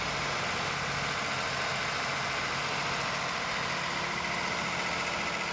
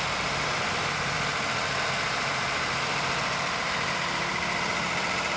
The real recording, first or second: first